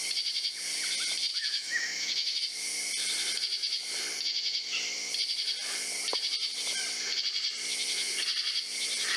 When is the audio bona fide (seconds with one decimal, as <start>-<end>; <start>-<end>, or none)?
0.0-1.3; 2.4-9.2